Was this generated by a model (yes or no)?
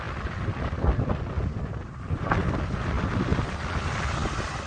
no